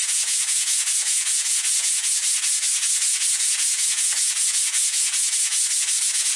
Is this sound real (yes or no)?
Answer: no